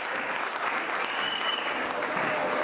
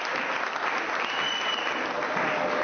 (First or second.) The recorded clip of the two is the second